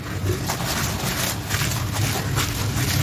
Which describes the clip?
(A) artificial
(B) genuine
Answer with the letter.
B